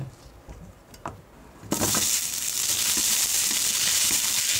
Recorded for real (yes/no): no